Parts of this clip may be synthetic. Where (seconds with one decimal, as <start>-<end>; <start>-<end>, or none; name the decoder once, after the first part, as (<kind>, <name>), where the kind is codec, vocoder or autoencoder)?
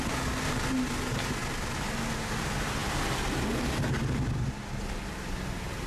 none